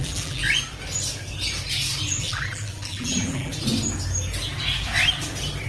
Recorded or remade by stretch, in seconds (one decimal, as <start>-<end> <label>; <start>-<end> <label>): 0.0-0.4 remade; 0.4-2.2 recorded; 2.2-3.5 remade; 3.5-5.7 recorded